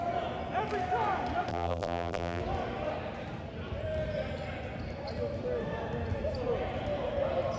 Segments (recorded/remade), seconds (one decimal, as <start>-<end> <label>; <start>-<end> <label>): 0.0-1.5 recorded; 1.5-2.4 remade; 2.4-7.6 recorded